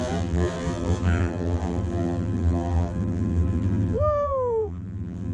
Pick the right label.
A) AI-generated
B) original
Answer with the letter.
A